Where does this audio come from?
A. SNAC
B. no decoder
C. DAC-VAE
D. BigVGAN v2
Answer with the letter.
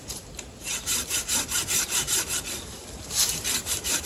D